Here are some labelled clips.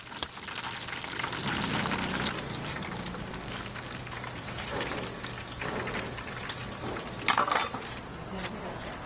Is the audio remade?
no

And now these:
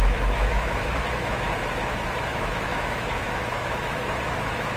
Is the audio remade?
yes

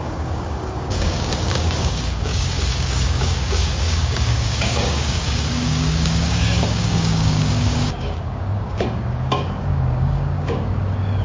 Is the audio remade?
yes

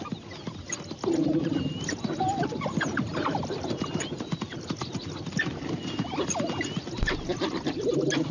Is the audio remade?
no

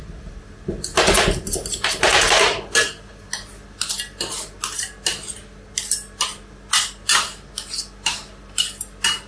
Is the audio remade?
no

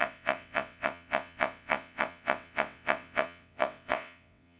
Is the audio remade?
yes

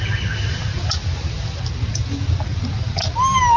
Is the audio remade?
no